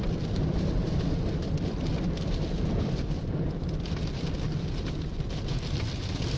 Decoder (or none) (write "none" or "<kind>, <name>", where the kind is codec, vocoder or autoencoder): vocoder, BigVGAN v2